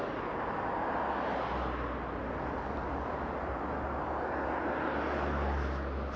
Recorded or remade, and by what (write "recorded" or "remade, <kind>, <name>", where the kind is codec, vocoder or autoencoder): recorded